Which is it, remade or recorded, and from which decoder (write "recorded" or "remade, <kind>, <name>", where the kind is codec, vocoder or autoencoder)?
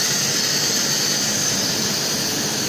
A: recorded